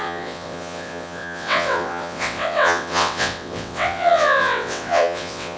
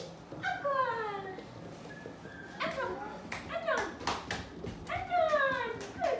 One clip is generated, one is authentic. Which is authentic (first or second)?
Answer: second